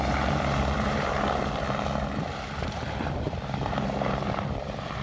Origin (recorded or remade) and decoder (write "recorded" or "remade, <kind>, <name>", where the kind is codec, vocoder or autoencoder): remade, vocoder, BigVGAN v2